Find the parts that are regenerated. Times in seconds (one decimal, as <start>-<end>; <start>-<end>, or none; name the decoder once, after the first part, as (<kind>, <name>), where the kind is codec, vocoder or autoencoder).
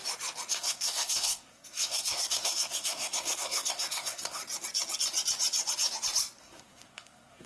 0.5-4.4 (codec, SNAC); 6.4-7.5